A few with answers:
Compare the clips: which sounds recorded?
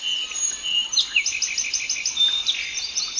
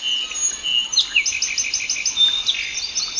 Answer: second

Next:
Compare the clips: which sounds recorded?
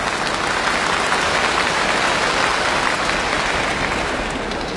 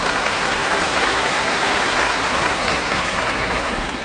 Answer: first